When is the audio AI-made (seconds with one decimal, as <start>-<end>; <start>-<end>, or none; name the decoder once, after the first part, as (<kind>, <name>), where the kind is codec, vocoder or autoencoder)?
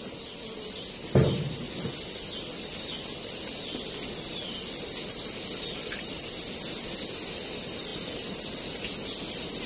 none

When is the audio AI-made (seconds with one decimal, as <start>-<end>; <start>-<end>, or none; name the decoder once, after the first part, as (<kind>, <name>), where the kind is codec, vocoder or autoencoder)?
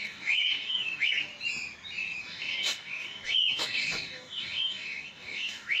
0.0-1.3 (codec, DAC); 2.2-5.8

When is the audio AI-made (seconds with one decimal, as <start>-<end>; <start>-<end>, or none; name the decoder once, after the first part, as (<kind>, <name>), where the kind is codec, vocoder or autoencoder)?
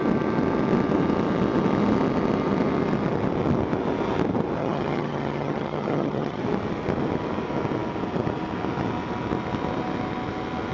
4.6-6.4 (vocoder, HiFi-GAN)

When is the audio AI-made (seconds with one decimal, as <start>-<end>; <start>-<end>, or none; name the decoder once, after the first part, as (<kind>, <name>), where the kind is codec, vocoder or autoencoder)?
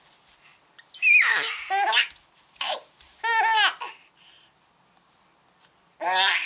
none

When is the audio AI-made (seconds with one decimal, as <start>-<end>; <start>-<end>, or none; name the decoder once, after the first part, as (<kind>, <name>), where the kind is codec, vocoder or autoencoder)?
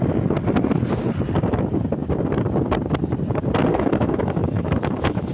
3.7-5.3 (autoencoder, DAC-VAE)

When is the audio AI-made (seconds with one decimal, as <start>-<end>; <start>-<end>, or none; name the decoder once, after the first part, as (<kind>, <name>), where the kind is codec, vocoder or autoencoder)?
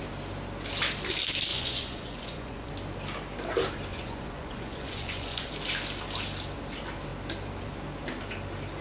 1.5-2.7 (vocoder, Vocos); 3.9-5.5